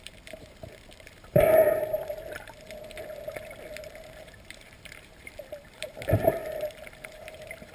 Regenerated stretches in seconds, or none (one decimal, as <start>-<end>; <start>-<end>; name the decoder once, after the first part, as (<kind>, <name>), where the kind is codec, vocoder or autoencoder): 0.0-2.0 (vocoder, BigVGAN v2); 4.2-6.4; 7.0-7.7

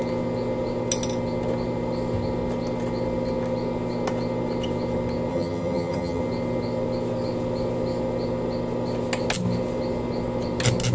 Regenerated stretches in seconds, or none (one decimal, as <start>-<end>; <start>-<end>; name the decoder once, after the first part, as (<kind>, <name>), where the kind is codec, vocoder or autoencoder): 5.3-6.2 (vocoder, HiFi-GAN)

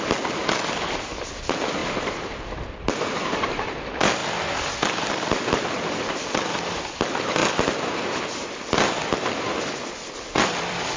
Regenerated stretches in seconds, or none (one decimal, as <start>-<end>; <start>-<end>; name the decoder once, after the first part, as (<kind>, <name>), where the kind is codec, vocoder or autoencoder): 0.0-0.4 (vocoder, BigVGAN v2); 1.4-4.2; 5.1-7.4; 9.9-11.0

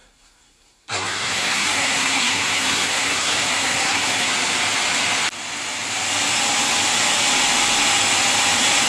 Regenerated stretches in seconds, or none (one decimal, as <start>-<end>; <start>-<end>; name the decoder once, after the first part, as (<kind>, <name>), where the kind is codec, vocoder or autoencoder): 0.0-4.3 (codec, SNAC)

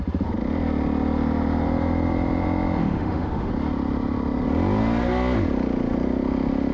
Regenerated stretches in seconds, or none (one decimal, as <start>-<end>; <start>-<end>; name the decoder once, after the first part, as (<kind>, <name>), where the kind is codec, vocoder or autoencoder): 2.8-3.5 (autoencoder, DAC-VAE)